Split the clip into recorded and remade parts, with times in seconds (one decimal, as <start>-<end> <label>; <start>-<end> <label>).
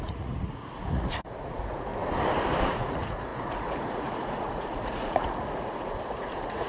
0.0-1.9 remade; 1.9-2.6 recorded; 2.6-6.7 remade